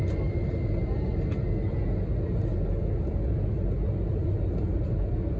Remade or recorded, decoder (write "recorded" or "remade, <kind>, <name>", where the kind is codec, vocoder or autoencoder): recorded